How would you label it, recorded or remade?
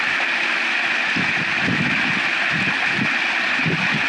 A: recorded